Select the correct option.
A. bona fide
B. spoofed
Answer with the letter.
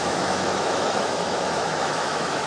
B